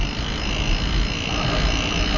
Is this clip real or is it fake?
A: real